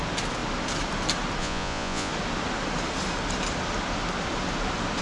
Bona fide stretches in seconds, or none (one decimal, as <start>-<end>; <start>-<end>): 0.0-1.4; 2.1-5.0

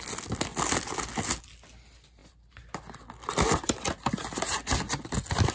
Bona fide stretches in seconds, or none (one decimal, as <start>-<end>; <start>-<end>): 0.0-5.5